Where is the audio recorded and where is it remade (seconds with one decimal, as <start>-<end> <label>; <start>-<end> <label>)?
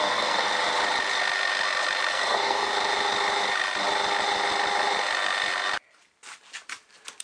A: 0.0-0.5 remade; 0.5-2.1 recorded; 2.1-2.7 remade; 2.7-7.2 recorded